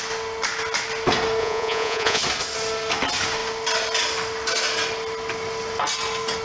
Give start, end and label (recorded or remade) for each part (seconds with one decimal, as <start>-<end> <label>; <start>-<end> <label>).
0.0-1.4 recorded; 1.4-2.2 remade; 2.2-6.4 recorded